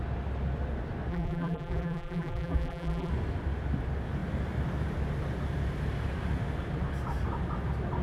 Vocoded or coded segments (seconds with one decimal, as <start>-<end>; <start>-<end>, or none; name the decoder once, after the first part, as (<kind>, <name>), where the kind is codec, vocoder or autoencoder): 1.1-3.1 (vocoder, BigVGAN v2)